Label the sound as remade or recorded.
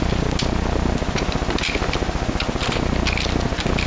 recorded